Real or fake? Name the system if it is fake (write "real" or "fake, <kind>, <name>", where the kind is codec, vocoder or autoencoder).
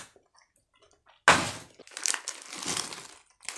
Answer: real